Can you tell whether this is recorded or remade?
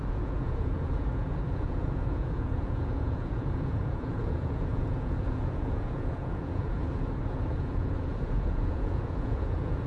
remade